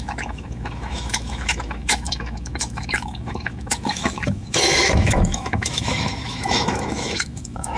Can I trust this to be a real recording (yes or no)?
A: no